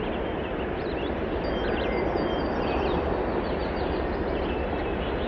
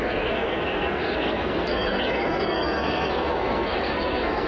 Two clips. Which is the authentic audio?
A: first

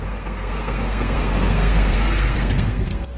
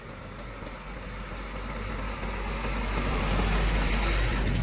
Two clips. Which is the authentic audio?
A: second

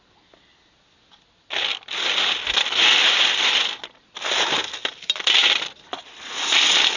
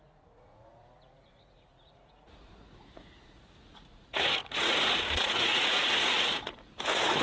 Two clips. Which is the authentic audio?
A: first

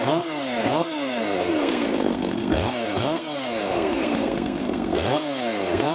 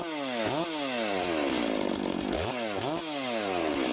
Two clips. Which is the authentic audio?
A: second